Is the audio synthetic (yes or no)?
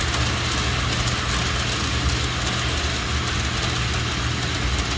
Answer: no